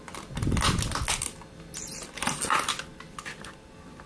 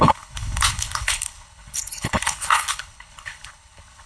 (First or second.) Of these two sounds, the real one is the first